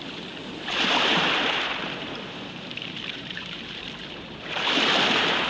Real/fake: fake